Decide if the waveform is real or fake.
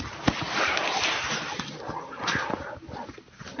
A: real